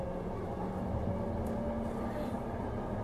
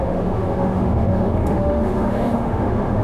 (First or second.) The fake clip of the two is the second